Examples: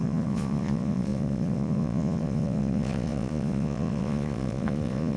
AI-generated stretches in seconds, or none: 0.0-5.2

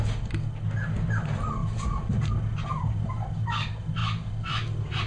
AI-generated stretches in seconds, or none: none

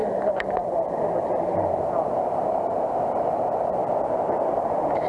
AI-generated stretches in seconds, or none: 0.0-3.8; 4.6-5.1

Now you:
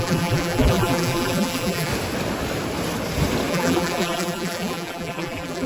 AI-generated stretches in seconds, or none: 0.0-1.9; 3.5-5.7

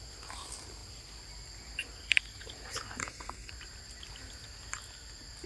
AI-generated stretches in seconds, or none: 3.0-3.5